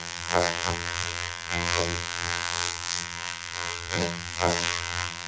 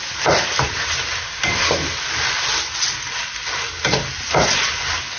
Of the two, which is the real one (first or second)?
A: second